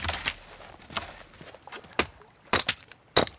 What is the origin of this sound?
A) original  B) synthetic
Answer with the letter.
A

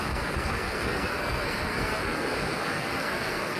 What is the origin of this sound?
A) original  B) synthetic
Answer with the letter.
B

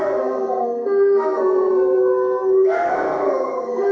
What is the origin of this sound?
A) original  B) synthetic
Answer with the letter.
B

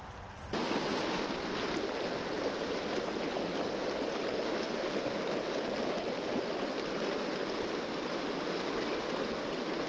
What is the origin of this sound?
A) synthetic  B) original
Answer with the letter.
B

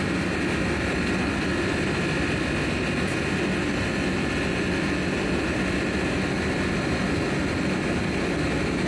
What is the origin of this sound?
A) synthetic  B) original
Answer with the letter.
B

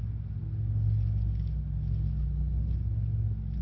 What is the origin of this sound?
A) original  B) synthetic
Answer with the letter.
A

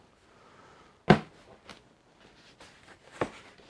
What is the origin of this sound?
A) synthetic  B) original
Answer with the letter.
B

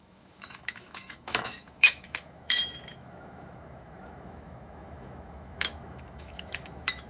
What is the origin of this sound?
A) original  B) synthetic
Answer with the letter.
B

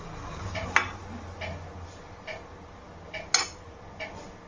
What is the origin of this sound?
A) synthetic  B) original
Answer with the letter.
B